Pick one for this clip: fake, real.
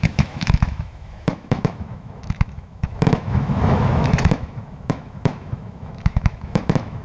fake